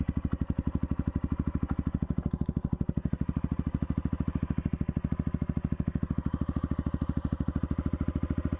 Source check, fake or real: real